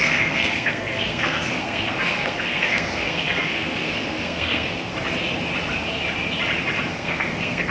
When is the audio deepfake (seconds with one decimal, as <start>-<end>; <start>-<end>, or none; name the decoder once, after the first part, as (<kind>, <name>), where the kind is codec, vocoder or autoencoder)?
0.0-4.9 (codec, SNAC); 6.9-7.7